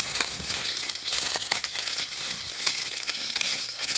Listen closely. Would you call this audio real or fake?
fake